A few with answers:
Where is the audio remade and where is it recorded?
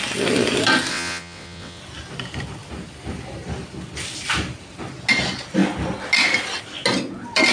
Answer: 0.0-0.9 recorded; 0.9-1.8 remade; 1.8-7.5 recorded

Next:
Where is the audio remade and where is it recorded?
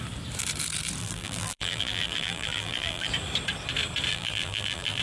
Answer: 0.0-1.0 recorded; 1.0-3.1 remade; 3.1-4.1 recorded; 4.1-5.0 remade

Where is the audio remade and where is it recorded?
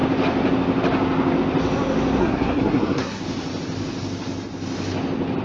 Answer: 0.0-2.2 recorded; 2.2-3.2 remade; 3.2-5.4 recorded